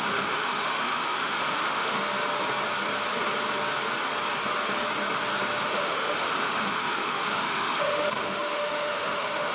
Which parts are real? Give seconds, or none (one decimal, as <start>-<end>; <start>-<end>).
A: 2.0-5.6